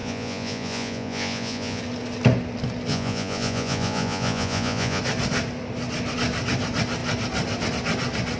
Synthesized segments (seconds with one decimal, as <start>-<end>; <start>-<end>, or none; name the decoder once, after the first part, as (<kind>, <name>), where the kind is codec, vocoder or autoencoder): 0.0-1.8 (vocoder, Vocos); 2.9-5.0